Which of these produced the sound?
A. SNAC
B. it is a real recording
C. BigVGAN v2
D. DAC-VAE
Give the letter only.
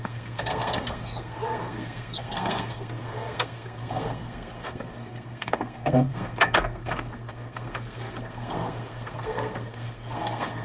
A